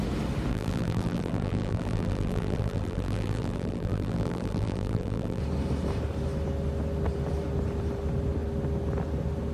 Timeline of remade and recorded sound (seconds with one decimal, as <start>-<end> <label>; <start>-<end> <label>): 0.0-0.5 recorded; 0.5-5.4 remade; 5.4-9.5 recorded